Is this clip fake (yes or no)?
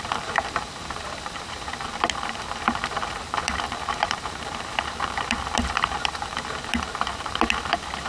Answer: yes